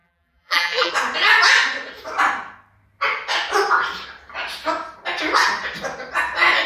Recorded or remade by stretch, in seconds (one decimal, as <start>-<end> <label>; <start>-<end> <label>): 0.0-0.9 remade; 0.9-6.7 recorded